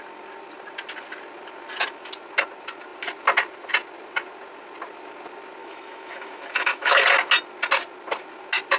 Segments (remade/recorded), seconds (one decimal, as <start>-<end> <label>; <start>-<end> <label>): 0.0-5.6 recorded; 5.6-7.0 remade; 7.0-8.8 recorded